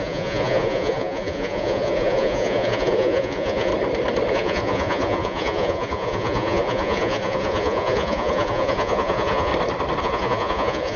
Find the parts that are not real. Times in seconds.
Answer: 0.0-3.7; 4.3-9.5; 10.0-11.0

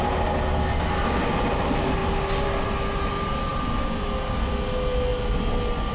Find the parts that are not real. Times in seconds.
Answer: none

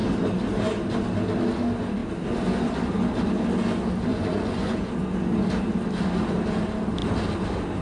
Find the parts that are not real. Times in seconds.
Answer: 4.1-4.9

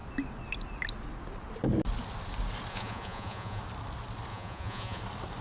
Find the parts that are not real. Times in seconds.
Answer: 2.7-3.6; 4.3-5.0

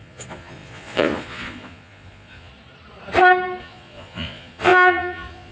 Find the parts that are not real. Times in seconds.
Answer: 0.0-2.5; 3.6-5.5

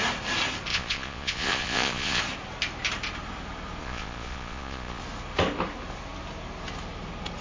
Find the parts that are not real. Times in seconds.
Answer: 0.7-2.2; 3.8-5.0